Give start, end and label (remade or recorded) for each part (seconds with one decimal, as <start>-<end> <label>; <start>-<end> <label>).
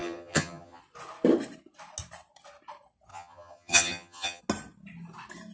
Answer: 0.0-0.8 remade; 0.8-3.1 recorded; 3.1-4.4 remade; 4.4-5.5 recorded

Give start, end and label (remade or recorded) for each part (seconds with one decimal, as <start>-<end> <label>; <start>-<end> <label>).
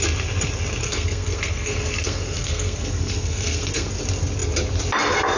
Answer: 0.0-0.8 recorded; 0.8-3.9 remade; 3.9-5.4 recorded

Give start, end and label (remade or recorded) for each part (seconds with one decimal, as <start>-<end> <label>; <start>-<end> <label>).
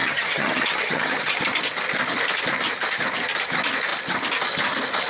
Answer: 0.0-1.3 remade; 1.3-5.1 recorded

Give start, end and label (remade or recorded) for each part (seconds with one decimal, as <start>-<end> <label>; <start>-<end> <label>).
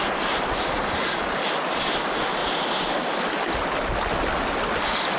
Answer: 0.0-5.2 recorded